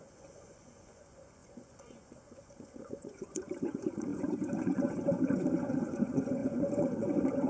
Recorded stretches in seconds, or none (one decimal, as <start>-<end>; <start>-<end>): none